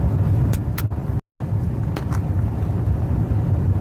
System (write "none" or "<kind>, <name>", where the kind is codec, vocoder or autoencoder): none